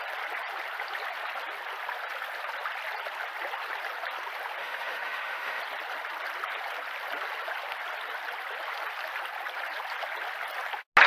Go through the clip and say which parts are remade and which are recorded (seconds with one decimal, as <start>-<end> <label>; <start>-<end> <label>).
0.0-4.6 recorded; 4.6-5.6 remade; 5.6-11.1 recorded